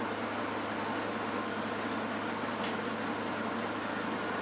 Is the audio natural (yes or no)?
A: yes